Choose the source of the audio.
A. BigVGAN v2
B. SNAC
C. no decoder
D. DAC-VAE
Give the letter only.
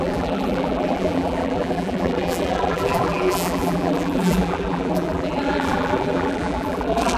A